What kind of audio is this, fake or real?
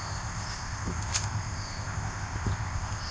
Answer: fake